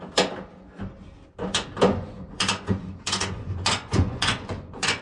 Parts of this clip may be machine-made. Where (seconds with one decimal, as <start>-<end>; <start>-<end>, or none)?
1.9-5.0